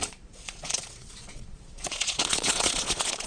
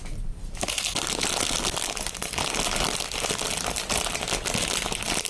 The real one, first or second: second